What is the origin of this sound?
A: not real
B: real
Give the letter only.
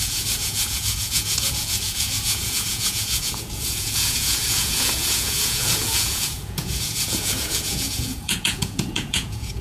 A